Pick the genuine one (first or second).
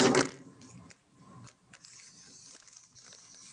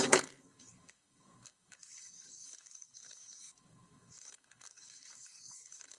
first